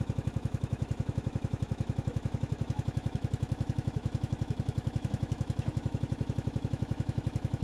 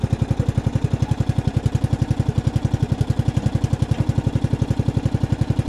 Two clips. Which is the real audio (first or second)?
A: second